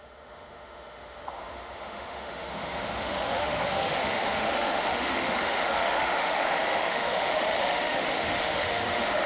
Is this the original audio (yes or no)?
no